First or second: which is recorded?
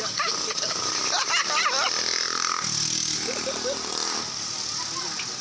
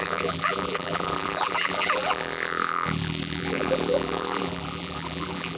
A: first